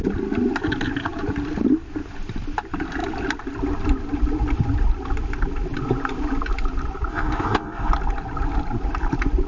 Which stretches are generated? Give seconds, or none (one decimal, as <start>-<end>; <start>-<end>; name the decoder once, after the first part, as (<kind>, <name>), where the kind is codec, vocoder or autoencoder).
7.1-7.9 (codec, SNAC)